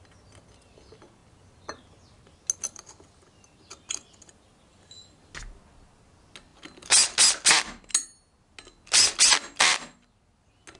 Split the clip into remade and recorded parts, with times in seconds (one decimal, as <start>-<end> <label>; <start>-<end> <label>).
0.0-10.8 recorded